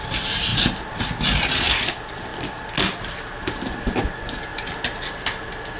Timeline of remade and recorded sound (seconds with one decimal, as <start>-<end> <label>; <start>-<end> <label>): 0.0-0.5 remade; 0.5-1.4 recorded; 1.4-2.3 remade; 2.3-3.4 recorded; 3.4-4.5 remade; 4.5-5.8 recorded